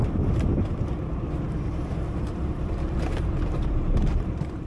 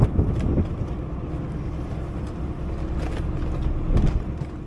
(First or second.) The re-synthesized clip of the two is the first